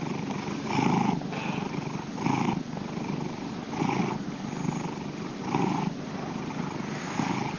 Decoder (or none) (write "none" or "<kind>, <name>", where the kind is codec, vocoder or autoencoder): none